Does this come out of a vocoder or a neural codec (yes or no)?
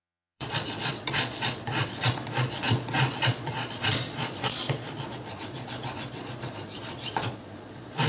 yes